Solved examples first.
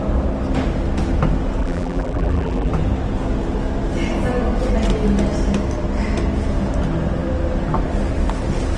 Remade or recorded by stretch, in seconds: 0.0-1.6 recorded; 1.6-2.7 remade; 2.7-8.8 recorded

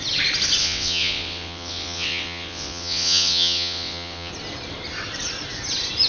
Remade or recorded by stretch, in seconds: 0.0-0.6 recorded; 0.6-4.3 remade; 4.3-6.1 recorded

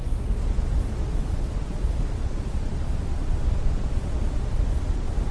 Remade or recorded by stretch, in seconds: 0.0-2.9 remade; 2.9-3.4 recorded; 3.4-5.3 remade

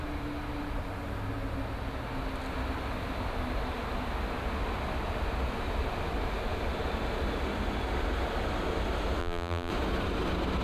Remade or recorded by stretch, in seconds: 0.0-9.2 recorded; 9.2-9.7 remade; 9.7-10.6 recorded

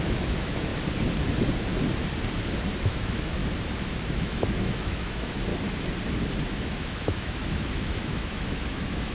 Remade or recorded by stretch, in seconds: 0.0-0.7 remade; 0.7-2.8 recorded; 2.8-3.4 remade; 3.4-3.9 recorded; 3.9-5.5 remade; 5.5-6.4 recorded; 6.4-9.1 remade

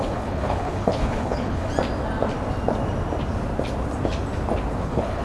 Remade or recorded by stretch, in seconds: 0.0-1.7 remade; 1.7-4.8 recorded; 4.8-5.2 remade

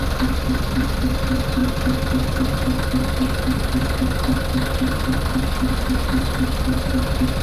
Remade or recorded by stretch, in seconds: 0.0-7.4 recorded